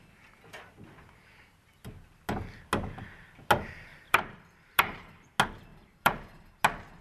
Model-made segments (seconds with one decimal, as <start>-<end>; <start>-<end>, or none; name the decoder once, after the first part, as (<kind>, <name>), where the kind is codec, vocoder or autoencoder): 3.9-5.3 (vocoder, BigVGAN v2); 5.7-6.6